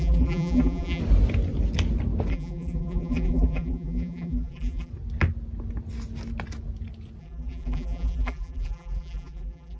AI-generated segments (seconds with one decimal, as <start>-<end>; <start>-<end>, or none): 0.0-1.0; 2.3-4.9; 7.2-9.8